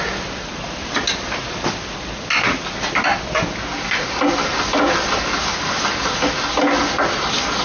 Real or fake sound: real